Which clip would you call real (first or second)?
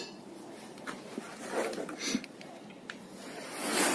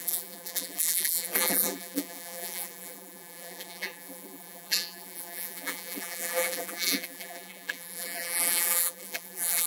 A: first